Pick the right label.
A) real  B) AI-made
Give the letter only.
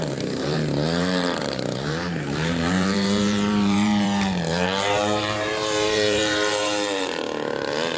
B